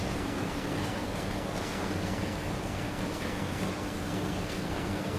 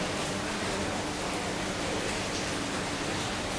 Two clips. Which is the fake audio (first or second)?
first